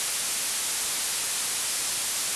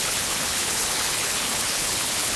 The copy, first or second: second